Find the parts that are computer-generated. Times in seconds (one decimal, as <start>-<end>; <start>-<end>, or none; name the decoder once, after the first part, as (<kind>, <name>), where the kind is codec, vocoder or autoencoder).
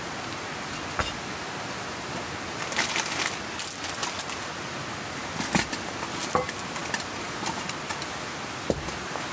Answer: none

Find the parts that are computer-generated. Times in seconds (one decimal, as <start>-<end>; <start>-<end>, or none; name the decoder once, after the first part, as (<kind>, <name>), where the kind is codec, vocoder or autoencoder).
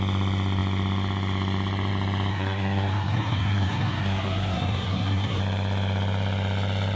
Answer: 2.3-5.4 (codec, SNAC)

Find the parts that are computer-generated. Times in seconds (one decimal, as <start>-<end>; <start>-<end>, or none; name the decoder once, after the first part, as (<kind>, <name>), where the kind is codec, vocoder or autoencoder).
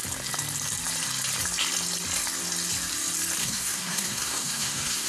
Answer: 3.4-5.1 (codec, SNAC)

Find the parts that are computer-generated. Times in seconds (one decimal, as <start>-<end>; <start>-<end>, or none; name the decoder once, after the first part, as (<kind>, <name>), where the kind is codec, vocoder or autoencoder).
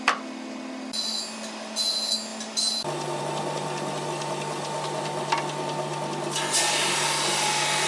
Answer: none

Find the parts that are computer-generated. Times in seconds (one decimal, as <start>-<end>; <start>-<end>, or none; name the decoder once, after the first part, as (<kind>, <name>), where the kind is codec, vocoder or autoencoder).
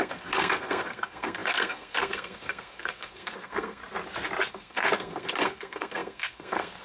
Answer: 0.0-3.8 (codec, SNAC); 4.5-6.8